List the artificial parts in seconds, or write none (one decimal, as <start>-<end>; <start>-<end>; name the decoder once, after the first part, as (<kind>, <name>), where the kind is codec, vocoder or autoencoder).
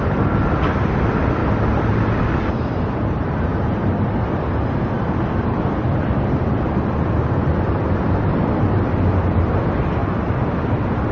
0.0-1.4 (vocoder, BigVGAN v2); 2.3-11.1